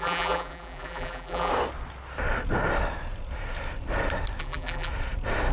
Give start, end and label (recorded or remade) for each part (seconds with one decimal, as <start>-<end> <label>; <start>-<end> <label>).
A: 0.0-1.5 remade; 1.5-4.4 recorded; 4.4-4.9 remade; 4.9-5.5 recorded